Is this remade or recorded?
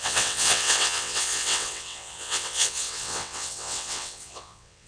remade